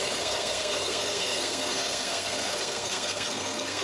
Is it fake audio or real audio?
fake